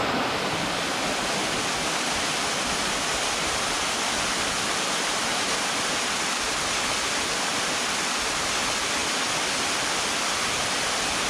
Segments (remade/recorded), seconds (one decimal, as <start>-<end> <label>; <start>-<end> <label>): 0.0-11.3 recorded